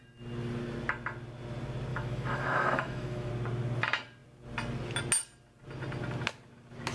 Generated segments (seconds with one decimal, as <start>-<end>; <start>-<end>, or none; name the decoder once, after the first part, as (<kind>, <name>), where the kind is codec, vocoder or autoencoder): 1.9-3.3 (autoencoder, DAC-VAE)